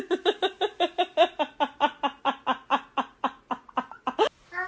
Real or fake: real